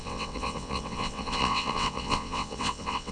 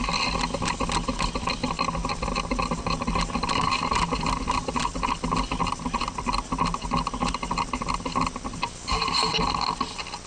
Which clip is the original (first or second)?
second